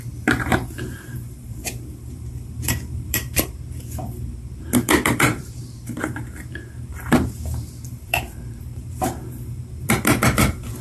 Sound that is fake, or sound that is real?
fake